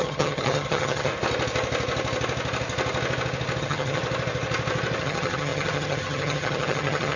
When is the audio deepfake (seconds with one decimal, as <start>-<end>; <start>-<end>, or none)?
0.0-1.1; 3.6-4.0; 5.0-7.2